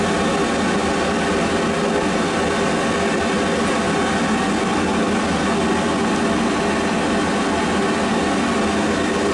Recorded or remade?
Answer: recorded